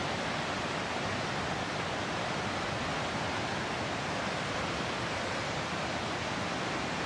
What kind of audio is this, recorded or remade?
recorded